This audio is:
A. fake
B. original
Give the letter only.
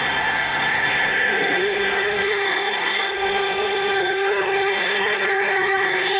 A